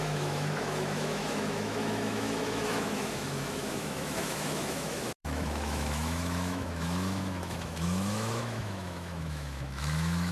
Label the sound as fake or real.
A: fake